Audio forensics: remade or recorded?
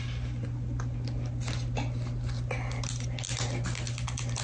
recorded